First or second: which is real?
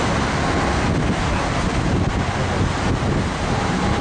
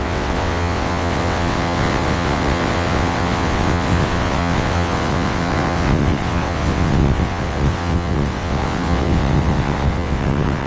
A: first